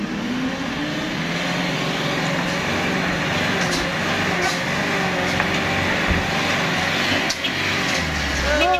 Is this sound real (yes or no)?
yes